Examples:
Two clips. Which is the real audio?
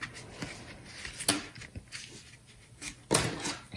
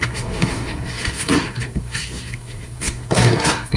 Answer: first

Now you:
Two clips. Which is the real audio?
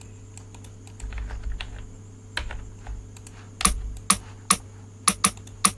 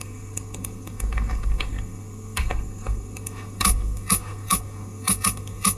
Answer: first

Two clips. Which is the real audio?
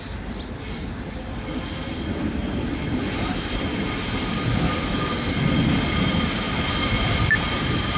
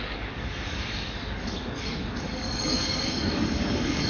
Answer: first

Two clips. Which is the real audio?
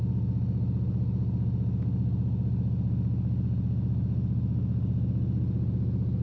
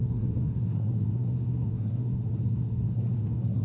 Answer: first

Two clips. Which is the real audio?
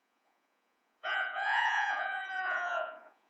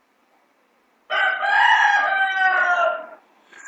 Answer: second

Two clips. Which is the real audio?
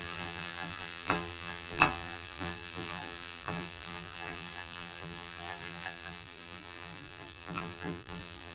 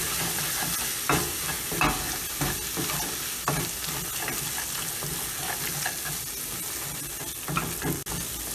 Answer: second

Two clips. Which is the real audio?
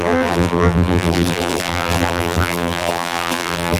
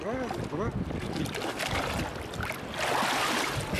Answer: second